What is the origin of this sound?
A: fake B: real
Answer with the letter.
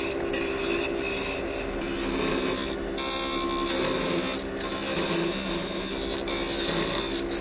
B